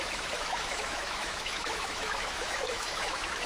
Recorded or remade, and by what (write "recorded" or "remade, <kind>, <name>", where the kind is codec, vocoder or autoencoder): remade, autoencoder, DAC-VAE